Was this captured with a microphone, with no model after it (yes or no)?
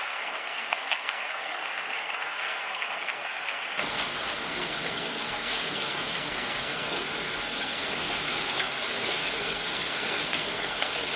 no